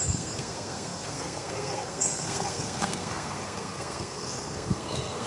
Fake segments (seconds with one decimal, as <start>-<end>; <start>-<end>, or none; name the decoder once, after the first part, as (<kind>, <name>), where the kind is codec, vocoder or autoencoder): 0.0-5.3 (codec, SNAC)